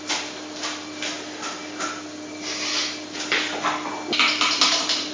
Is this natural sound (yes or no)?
yes